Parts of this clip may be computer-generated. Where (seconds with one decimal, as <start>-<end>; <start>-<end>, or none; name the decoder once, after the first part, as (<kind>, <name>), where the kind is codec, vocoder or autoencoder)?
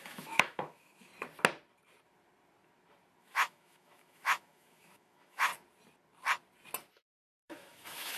0.0-1.1 (autoencoder, DAC-VAE); 3.2-5.5; 7.2-8.2